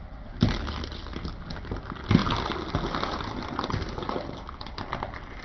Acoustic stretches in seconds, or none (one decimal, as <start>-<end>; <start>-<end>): 0.0-5.4